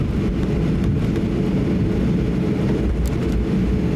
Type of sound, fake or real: real